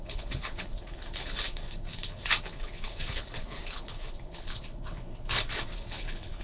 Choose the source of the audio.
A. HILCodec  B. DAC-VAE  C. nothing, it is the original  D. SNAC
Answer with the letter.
A